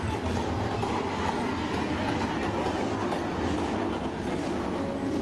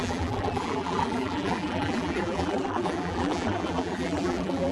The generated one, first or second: second